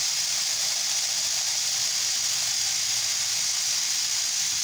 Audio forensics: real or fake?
real